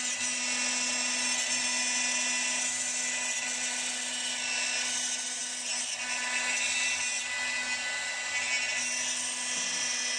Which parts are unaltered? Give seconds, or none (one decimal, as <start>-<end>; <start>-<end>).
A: 0.0-10.2